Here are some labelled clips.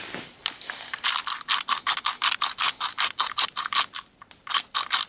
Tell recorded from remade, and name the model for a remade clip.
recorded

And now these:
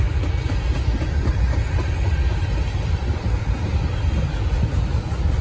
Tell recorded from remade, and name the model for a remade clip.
recorded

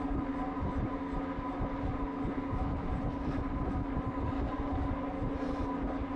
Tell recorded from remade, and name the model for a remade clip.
recorded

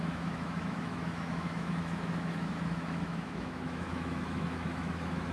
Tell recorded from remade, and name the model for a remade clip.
remade, autoencoder, DAC-VAE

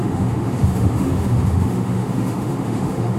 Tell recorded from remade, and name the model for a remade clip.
remade, autoencoder, DAC-VAE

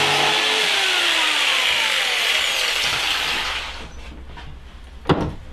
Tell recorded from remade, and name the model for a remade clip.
recorded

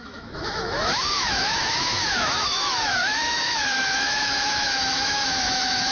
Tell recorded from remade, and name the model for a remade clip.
remade, autoencoder, DAC-VAE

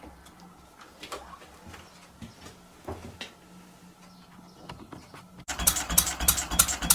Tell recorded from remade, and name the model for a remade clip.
recorded